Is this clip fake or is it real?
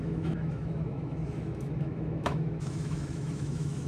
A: fake